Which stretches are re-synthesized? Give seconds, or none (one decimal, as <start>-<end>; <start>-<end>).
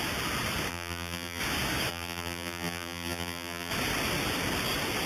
0.7-1.4; 1.9-3.7